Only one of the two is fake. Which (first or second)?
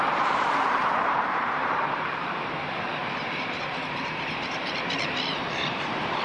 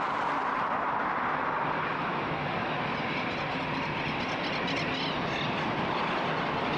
first